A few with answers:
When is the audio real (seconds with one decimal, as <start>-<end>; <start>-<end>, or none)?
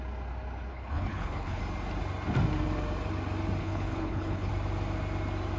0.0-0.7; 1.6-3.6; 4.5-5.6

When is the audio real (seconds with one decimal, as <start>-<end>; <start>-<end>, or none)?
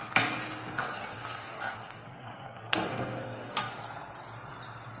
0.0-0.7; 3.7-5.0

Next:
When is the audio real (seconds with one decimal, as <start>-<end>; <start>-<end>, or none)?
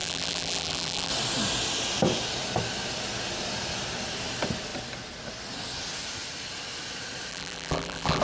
1.1-7.3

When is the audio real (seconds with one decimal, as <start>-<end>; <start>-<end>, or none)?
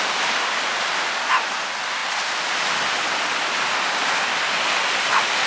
0.0-5.5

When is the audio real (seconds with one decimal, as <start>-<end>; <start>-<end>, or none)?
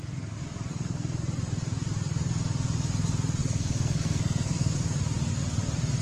0.0-0.7; 1.2-3.4; 4.7-6.0